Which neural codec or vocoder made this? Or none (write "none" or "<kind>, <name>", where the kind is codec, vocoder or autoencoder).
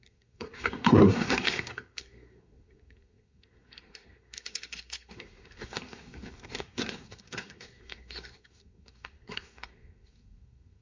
codec, SNAC